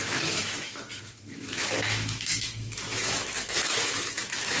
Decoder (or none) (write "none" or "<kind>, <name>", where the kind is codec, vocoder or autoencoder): autoencoder, DAC-VAE